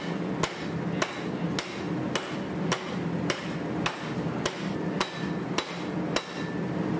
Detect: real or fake real